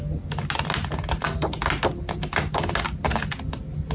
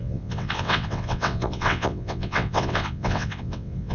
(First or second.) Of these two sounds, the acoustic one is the first